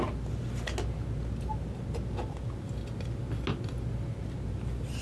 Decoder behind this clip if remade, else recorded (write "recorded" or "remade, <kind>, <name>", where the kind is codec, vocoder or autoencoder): recorded